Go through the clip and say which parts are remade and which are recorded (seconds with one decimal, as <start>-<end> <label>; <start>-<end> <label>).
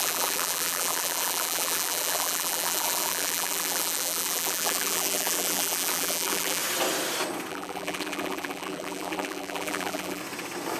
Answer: 0.0-6.6 remade; 6.6-7.5 recorded; 7.5-10.2 remade; 10.2-10.8 recorded